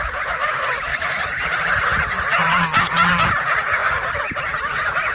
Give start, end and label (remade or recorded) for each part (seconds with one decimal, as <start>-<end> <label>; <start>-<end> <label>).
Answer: 0.0-0.9 recorded; 0.9-1.7 remade; 1.7-2.5 recorded; 2.5-3.1 remade; 3.1-5.1 recorded